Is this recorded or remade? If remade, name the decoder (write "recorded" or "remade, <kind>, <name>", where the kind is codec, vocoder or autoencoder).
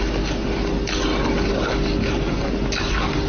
recorded